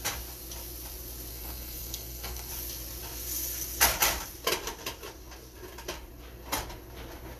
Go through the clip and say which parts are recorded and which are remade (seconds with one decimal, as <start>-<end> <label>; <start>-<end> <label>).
0.0-1.3 recorded; 1.3-2.5 remade; 2.5-7.4 recorded